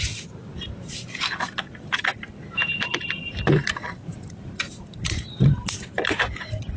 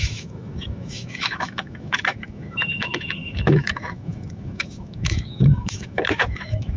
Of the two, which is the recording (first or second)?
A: first